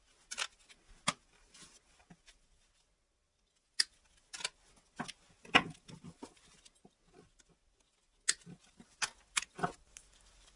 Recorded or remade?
recorded